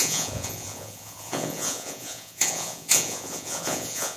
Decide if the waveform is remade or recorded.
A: remade